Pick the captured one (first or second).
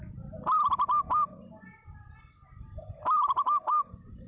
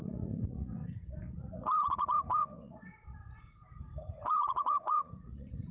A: first